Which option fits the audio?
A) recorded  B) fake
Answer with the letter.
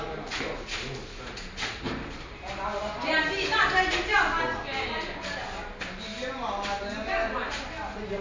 A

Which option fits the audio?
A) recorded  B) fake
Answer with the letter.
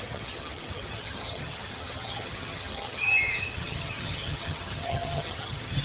B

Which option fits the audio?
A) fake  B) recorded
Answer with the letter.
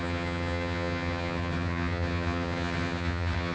A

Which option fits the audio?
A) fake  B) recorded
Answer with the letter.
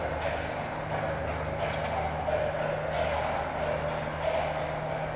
B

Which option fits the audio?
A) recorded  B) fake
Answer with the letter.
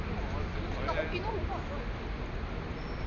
A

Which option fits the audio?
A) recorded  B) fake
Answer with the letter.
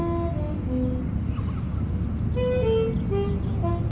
A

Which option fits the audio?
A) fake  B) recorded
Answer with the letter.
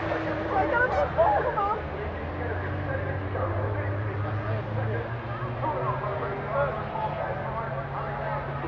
B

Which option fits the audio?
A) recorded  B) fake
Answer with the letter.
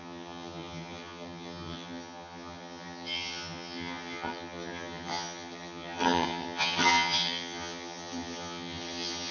B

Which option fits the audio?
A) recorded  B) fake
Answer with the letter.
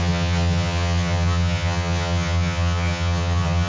B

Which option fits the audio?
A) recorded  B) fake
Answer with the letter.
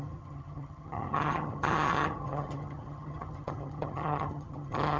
B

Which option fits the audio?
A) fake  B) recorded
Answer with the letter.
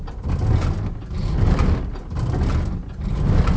B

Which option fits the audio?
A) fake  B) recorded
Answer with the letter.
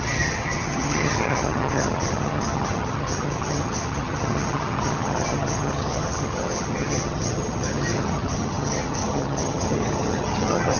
A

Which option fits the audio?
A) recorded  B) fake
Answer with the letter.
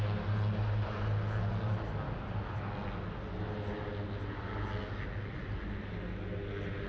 A